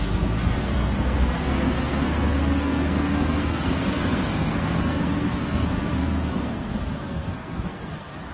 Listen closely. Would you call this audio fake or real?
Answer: fake